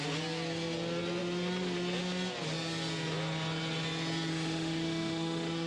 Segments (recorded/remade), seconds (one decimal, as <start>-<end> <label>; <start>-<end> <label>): 0.0-4.3 recorded; 4.3-5.7 remade